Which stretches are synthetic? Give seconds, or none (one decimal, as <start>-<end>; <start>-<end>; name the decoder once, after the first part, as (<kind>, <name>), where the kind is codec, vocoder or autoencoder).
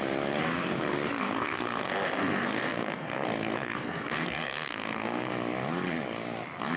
1.2-5.3 (codec, SNAC)